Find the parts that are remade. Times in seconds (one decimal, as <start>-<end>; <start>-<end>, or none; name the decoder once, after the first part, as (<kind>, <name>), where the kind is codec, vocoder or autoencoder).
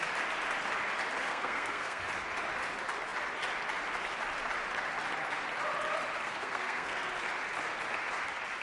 1.3-2.0 (codec, SNAC); 6.2-7.1